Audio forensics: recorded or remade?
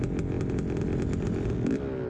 recorded